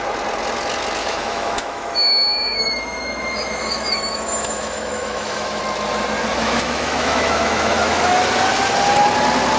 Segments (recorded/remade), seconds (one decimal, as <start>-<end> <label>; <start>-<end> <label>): 0.0-1.0 recorded; 1.0-5.6 remade; 5.6-6.3 recorded; 6.3-8.2 remade; 8.2-9.6 recorded